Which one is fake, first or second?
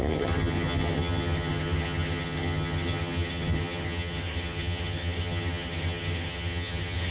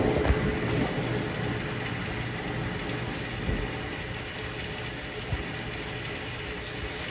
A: first